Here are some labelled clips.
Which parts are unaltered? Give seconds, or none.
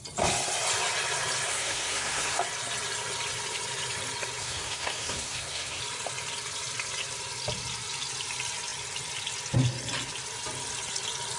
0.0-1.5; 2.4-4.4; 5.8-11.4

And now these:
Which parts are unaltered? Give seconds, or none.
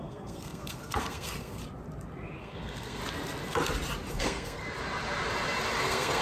1.6-2.4; 3.0-4.1; 4.6-5.8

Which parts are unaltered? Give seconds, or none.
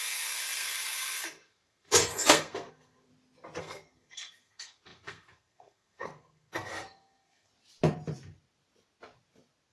3.1-3.6; 7.5-9.7